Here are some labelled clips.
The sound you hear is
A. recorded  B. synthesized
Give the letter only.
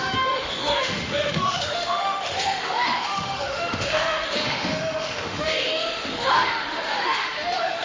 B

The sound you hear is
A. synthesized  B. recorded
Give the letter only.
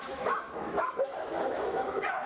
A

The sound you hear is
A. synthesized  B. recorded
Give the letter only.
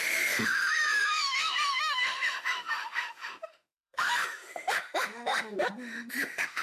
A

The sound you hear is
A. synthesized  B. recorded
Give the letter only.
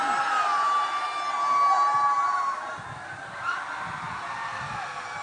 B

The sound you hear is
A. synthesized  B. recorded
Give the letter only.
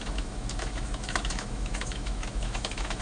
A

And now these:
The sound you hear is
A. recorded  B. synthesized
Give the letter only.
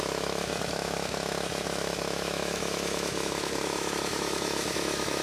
B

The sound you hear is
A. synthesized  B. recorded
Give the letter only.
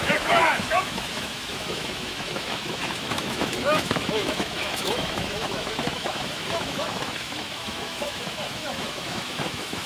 A